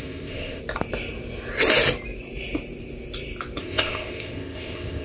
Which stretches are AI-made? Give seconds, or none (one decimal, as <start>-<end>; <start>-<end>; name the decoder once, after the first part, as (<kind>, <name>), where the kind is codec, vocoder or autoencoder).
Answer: 0.0-0.6 (codec, ZipCodec); 3.6-5.0